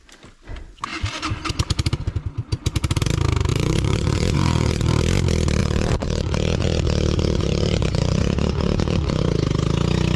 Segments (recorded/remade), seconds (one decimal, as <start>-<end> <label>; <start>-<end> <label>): 0.0-3.5 recorded; 3.5-4.9 remade; 4.9-5.6 recorded; 5.6-9.2 remade; 9.2-10.2 recorded

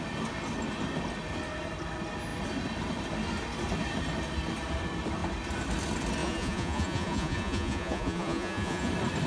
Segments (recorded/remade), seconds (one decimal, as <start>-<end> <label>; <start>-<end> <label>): 0.0-6.2 recorded; 6.2-8.9 remade; 8.9-9.3 recorded